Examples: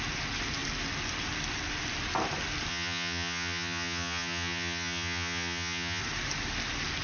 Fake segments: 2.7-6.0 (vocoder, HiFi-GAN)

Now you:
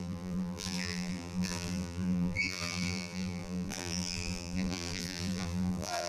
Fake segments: 0.0-6.1 (vocoder, BigVGAN v2)

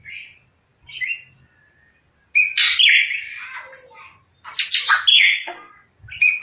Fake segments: 5.1-5.7 (codec, SNAC)

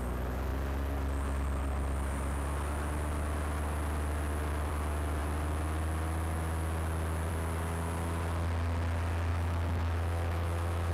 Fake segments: 9.3-10.9 (autoencoder, DAC-VAE)

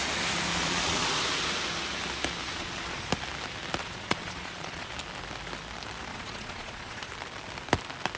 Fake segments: 0.5-1.1 (vocoder, Vocos); 2.5-3.1; 3.8-4.9; 6.1-7.1